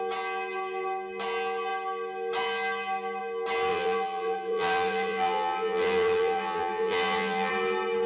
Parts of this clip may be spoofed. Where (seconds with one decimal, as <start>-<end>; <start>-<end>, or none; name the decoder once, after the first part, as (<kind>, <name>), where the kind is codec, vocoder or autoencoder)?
3.7-7.5 (vocoder, BigVGAN v2)